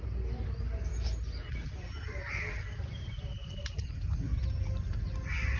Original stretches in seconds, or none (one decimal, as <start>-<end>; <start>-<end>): 0.0-5.6